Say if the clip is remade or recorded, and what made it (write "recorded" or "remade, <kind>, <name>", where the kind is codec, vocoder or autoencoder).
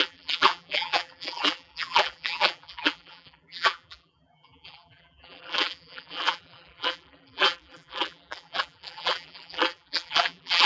remade, vocoder, BigVGAN v2